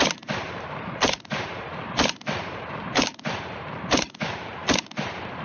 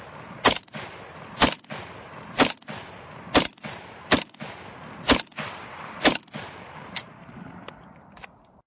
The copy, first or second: first